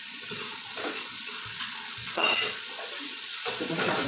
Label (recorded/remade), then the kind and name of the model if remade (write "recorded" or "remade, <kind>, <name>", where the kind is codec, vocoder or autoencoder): remade, vocoder, Vocos